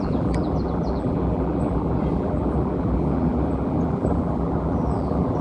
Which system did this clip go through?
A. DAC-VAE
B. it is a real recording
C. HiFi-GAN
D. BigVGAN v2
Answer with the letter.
D